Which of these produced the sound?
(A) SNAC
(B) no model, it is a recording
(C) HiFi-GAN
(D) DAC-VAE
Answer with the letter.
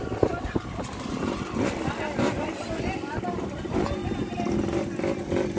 B